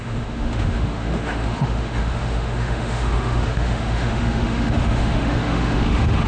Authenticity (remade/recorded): remade